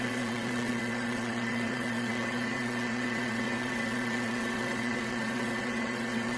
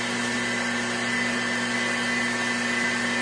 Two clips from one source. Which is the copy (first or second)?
first